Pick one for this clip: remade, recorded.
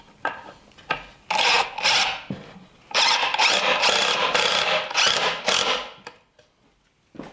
recorded